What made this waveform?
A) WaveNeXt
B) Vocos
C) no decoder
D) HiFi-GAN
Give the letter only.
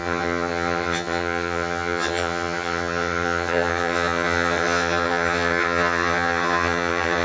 D